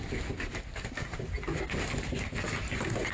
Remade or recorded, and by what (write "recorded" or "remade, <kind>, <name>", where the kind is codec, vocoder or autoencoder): recorded